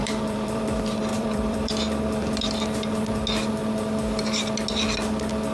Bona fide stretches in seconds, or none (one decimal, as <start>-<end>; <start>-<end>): 0.6-1.1; 1.7-5.5